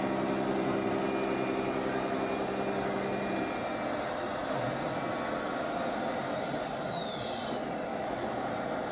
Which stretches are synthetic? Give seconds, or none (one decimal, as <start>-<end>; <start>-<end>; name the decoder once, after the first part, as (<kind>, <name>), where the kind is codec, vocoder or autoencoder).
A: 7.9-8.5 (autoencoder, DAC-VAE)